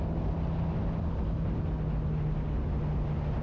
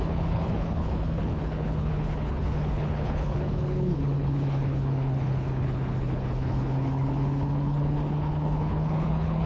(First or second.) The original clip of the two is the first